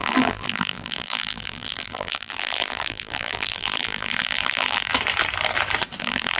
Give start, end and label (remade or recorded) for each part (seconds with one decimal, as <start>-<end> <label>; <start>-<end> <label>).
0.0-4.9 remade; 4.9-6.0 recorded; 6.0-6.4 remade